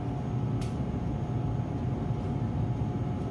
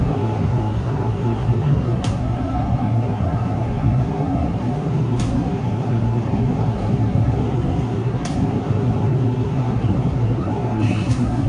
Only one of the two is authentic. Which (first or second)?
first